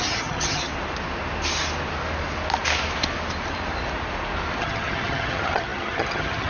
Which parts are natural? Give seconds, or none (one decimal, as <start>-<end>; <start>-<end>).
0.7-4.6